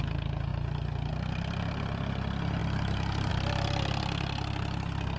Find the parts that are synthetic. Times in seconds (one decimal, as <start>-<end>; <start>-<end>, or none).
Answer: none